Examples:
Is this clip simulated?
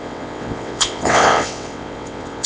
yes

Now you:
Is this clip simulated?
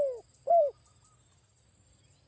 no